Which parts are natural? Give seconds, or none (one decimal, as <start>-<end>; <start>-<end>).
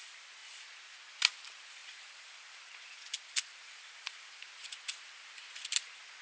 0.0-1.8; 5.1-6.2